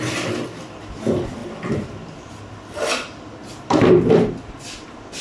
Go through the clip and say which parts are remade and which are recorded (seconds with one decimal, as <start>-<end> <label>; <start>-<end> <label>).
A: 0.0-1.4 recorded; 1.4-2.3 remade; 2.3-3.4 recorded; 3.4-4.1 remade; 4.1-5.2 recorded